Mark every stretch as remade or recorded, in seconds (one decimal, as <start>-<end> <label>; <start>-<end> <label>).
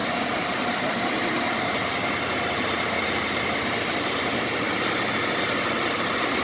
0.0-3.8 remade; 3.8-6.4 recorded